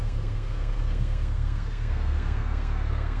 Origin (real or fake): fake